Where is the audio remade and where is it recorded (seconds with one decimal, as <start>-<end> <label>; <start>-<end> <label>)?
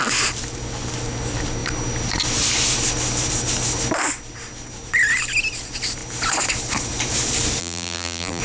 0.0-7.6 recorded; 7.6-8.4 remade